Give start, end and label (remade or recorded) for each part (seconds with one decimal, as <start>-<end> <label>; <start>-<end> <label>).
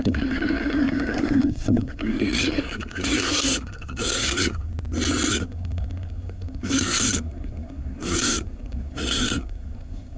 0.0-4.7 remade; 4.7-5.3 recorded; 5.3-10.2 remade